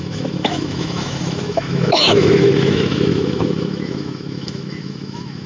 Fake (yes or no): yes